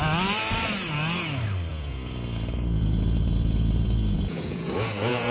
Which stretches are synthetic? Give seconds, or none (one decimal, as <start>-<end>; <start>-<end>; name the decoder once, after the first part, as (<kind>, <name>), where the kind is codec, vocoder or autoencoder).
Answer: 1.7-5.3 (vocoder, Vocos)